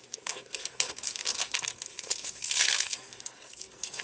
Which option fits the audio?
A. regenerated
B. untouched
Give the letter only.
A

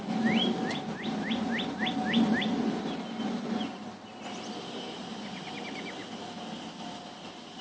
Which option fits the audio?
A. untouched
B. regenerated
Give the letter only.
A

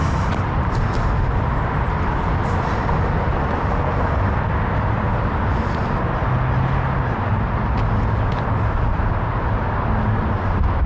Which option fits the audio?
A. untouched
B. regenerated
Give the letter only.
A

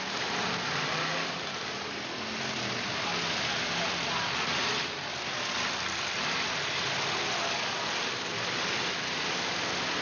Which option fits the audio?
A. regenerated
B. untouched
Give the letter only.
B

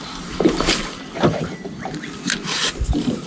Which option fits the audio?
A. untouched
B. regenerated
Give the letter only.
A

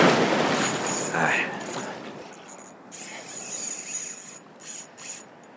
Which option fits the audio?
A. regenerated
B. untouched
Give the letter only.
B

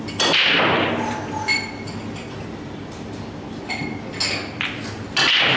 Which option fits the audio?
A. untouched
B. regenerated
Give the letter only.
A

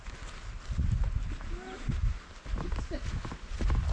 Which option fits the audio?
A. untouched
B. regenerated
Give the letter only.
A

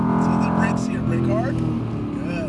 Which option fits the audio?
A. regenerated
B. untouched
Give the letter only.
B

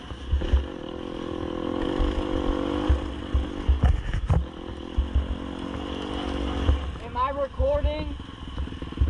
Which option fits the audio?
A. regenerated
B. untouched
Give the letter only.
B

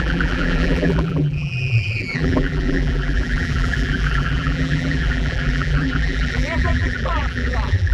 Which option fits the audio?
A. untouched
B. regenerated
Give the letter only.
B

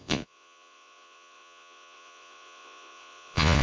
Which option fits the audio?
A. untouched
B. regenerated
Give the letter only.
B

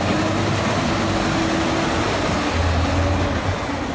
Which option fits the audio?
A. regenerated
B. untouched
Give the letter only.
B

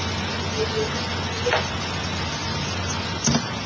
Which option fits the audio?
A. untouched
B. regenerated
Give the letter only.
A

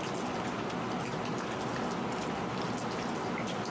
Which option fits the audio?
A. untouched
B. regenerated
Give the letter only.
A